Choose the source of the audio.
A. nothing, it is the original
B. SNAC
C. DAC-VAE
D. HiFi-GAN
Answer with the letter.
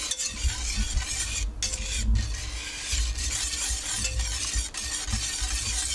A